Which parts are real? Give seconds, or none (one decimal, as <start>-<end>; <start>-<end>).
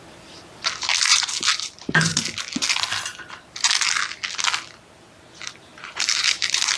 0.0-1.1; 2.2-5.7